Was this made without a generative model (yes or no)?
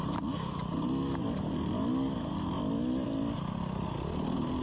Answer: yes